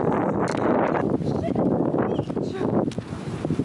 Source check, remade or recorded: recorded